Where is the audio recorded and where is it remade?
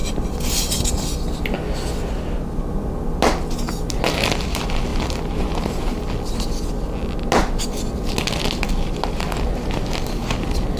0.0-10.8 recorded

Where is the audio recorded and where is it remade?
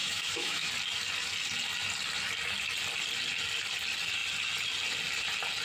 0.0-0.7 remade; 0.7-5.6 recorded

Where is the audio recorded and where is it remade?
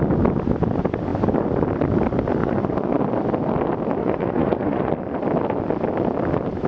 0.0-2.4 recorded; 2.4-3.0 remade; 3.0-4.0 recorded; 4.0-4.9 remade; 4.9-6.7 recorded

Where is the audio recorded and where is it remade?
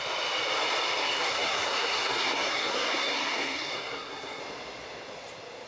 0.0-1.0 recorded; 1.0-4.4 remade; 4.4-5.7 recorded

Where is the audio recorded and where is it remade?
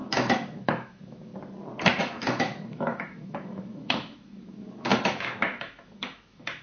0.0-1.3 remade; 1.3-2.0 recorded; 2.0-6.6 remade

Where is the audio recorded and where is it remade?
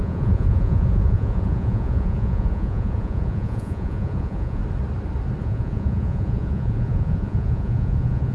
0.0-4.6 remade; 4.6-5.4 recorded; 5.4-8.3 remade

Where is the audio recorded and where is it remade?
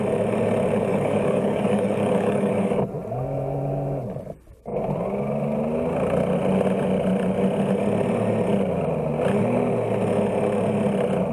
0.0-0.9 recorded; 0.9-2.9 remade; 2.9-11.3 recorded